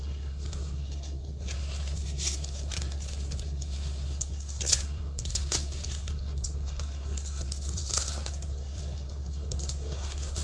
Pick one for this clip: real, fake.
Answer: fake